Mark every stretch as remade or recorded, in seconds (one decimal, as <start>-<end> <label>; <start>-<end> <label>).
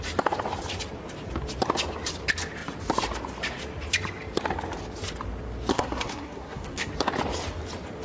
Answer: 0.0-5.7 recorded; 5.7-6.9 remade; 6.9-8.0 recorded